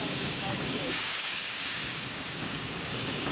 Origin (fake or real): fake